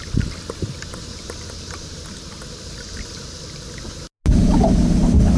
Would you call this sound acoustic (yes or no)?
yes